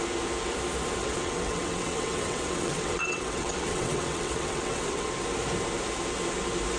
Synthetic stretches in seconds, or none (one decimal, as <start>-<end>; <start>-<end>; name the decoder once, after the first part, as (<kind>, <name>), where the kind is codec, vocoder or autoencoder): 1.0-5.1 (vocoder, WaveNeXt)